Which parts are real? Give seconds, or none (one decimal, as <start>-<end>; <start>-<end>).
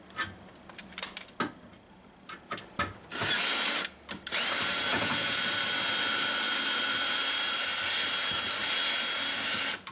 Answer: 0.0-4.9; 5.4-9.9